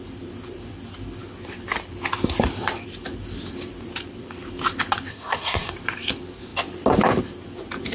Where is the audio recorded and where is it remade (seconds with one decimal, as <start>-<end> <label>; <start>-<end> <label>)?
0.0-5.1 recorded; 5.1-5.7 remade; 5.7-7.9 recorded